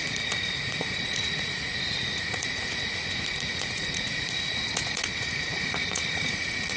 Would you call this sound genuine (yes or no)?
no